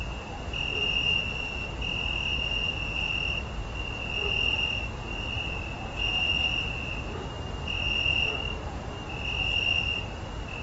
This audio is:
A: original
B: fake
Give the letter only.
A